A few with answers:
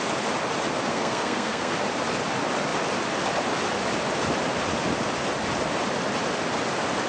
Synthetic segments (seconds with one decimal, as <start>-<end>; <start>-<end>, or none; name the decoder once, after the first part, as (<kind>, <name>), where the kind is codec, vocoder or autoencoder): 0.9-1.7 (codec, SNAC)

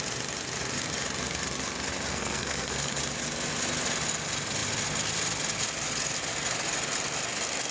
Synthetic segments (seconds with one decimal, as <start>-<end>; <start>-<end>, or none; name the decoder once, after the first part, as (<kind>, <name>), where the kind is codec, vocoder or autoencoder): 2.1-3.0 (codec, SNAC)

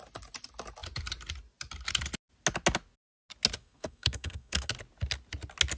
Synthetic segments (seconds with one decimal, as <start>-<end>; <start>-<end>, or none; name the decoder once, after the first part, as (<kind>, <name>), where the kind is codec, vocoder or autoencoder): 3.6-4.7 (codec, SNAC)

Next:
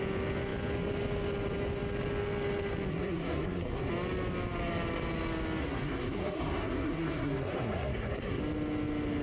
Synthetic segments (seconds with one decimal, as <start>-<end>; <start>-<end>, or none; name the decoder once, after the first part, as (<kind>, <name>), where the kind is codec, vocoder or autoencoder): 2.9-3.9 (codec, SNAC); 5.6-8.4

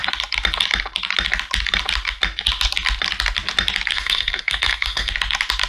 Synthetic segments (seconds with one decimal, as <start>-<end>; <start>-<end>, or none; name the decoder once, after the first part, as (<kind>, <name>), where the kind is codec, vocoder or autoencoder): 3.9-5.1 (codec, SNAC)

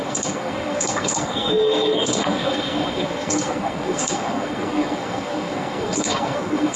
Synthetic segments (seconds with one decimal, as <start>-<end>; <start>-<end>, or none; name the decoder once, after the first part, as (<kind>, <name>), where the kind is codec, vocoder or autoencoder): 0.0-6.8 (codec, SNAC)

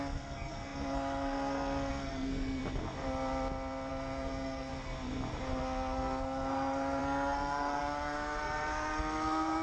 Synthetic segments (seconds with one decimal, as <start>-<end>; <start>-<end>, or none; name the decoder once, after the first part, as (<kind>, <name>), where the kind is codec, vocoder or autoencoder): 0.0-2.6 (codec, SNAC); 3.9-4.7; 5.5-9.6